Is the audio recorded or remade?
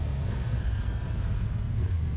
remade